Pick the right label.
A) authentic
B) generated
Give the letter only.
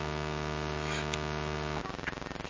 A